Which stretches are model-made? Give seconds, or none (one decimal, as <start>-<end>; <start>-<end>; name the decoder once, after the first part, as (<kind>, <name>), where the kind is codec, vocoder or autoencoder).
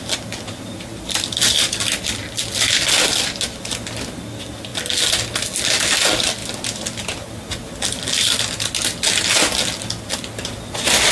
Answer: 0.9-2.2 (vocoder, BigVGAN v2)